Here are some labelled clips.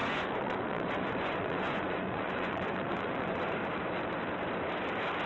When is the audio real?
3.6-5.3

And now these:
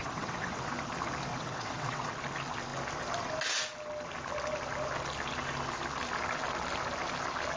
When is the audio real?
0.7-1.3; 2.1-7.6

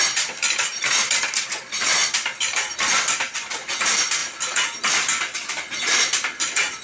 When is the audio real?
none

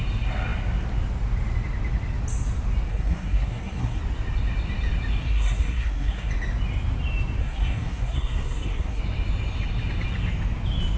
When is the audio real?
0.0-2.9; 4.0-5.2; 6.3-7.4; 9.0-11.0

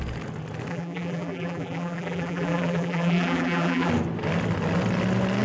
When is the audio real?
0.0-0.7; 3.9-5.4

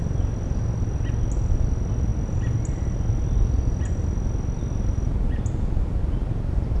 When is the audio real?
0.0-6.8

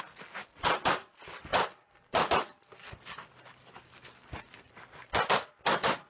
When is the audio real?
0.0-6.1